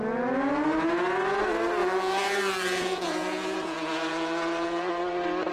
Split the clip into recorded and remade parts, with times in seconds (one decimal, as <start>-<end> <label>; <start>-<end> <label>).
0.0-1.8 recorded; 1.8-4.9 remade; 4.9-5.5 recorded